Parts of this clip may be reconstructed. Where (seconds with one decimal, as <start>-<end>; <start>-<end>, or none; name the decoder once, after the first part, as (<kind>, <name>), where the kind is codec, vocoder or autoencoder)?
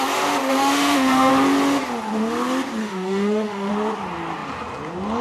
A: 0.4-1.3 (autoencoder, DAC-VAE); 2.8-3.7